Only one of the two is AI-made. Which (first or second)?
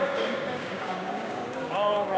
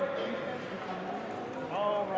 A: first